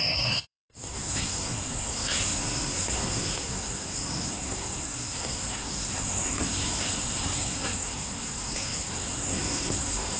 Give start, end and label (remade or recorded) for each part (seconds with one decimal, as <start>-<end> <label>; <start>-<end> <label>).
0.0-10.2 remade